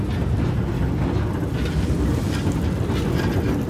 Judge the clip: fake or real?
real